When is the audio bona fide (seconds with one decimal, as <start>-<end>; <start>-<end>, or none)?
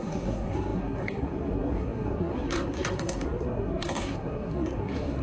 none